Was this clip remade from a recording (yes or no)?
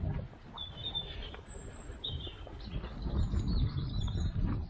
no